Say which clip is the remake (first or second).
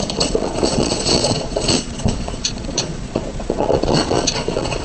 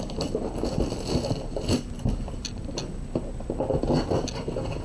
first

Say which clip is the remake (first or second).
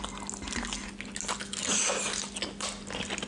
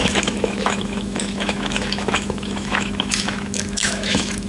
second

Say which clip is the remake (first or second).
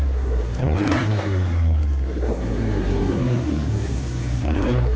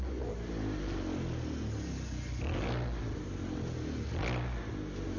first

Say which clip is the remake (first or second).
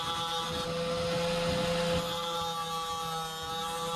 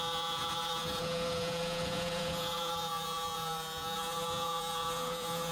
second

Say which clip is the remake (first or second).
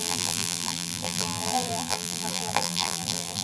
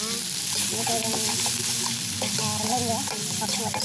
first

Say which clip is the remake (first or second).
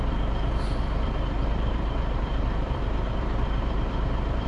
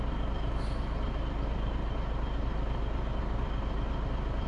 first